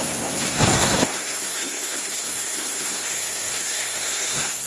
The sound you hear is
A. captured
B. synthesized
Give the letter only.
B